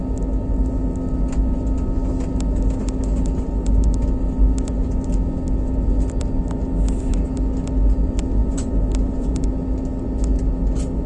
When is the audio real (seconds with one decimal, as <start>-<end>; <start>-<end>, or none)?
0.0-8.4; 9.4-11.1